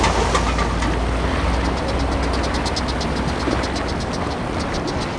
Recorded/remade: recorded